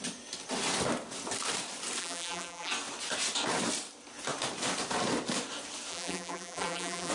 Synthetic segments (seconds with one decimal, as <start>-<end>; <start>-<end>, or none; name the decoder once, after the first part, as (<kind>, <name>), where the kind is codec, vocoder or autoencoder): 2.0-2.7 (vocoder, BigVGAN v2); 5.9-7.1